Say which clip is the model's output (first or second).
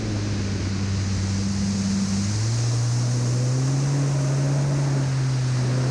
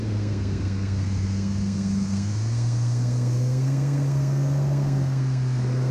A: second